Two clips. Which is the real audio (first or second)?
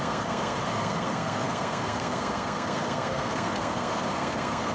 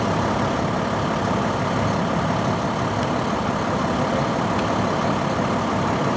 second